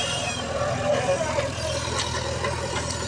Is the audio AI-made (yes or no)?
yes